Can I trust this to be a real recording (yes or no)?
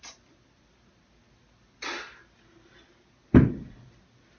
yes